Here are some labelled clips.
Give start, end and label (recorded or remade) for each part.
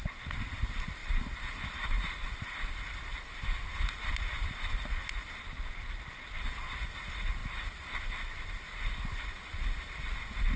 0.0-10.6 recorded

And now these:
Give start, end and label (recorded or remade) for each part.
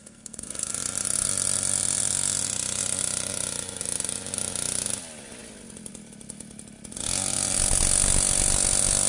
0.0-0.7 remade; 0.7-9.1 recorded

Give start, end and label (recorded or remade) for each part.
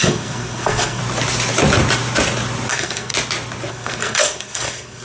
0.0-1.0 remade; 1.0-2.7 recorded; 2.7-3.1 remade; 3.1-3.7 recorded; 3.7-5.0 remade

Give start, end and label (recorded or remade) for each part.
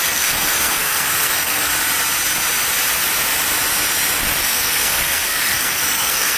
0.0-1.7 remade; 1.7-4.4 recorded; 4.4-6.4 remade